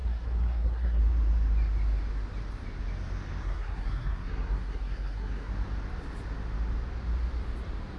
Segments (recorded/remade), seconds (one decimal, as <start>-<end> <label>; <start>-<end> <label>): 0.0-1.0 remade; 1.0-3.4 recorded; 3.4-5.5 remade; 5.5-8.0 recorded